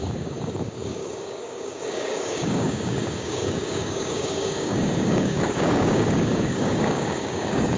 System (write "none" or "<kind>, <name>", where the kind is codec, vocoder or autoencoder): codec, DAC